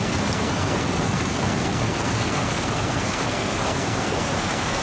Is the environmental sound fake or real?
fake